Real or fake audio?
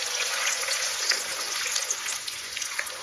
fake